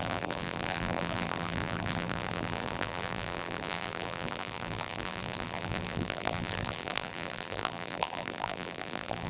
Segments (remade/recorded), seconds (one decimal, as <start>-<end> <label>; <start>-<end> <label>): 0.0-9.3 remade